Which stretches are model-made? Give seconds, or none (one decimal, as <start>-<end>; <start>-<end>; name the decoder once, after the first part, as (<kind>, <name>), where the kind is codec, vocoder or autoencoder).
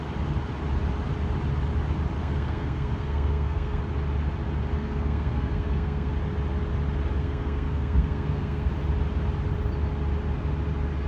2.2-3.8 (codec, SNAC); 4.7-6.1; 7.2-8.7